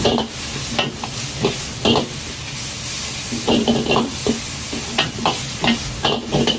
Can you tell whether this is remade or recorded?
recorded